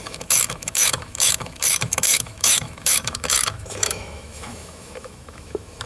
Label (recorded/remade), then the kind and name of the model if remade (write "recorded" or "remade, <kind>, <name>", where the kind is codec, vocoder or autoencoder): remade, autoencoder, DAC-VAE